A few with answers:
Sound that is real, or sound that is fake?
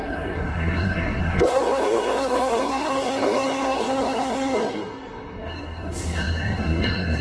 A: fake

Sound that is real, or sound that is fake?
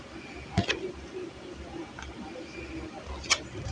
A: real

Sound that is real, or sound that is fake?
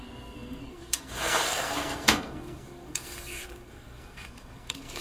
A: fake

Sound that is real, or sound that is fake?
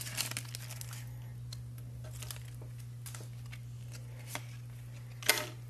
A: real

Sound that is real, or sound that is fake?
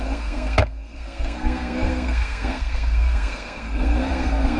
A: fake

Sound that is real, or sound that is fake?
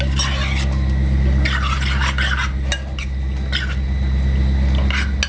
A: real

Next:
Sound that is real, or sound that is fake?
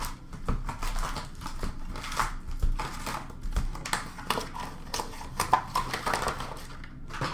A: real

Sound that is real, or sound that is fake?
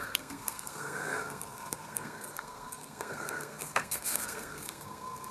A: fake